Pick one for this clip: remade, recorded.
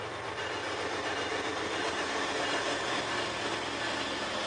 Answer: recorded